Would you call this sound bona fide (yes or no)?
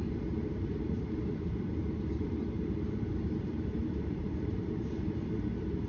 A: no